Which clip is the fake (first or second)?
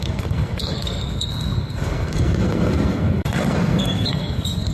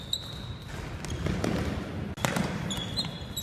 first